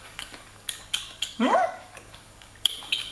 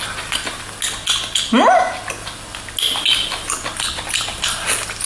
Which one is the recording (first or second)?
second